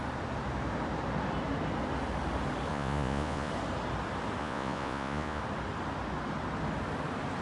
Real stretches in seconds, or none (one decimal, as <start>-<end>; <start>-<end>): 0.0-2.7; 3.5-4.4; 5.4-7.4